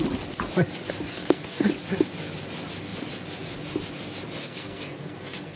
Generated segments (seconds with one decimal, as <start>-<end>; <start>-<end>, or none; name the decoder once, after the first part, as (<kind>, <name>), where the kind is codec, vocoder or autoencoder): 1.1-1.7 (codec, SNAC); 4.4-5.6

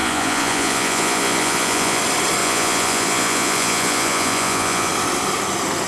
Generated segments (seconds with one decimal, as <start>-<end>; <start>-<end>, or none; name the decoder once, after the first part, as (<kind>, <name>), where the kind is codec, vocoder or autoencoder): 0.0-2.0 (vocoder, Vocos); 2.4-4.9

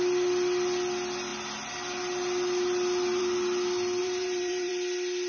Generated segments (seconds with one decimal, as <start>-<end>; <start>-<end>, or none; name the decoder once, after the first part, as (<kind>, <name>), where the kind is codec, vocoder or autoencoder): 4.0-4.7 (vocoder, BigVGAN v2)

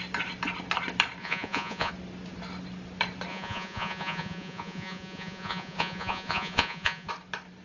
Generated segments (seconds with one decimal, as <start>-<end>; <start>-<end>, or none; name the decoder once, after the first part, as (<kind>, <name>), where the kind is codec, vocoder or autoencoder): 1.2-1.9 (vocoder, Vocos); 3.3-7.1

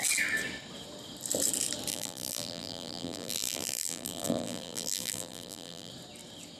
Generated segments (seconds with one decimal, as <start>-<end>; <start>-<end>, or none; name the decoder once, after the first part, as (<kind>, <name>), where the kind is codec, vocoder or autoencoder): 1.9-5.9 (vocoder, BigVGAN v2)